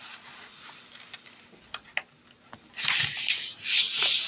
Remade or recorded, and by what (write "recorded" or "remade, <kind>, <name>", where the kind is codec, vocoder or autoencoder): recorded